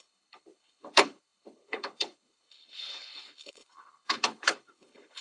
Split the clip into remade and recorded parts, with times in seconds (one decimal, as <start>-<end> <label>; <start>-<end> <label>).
0.0-5.2 remade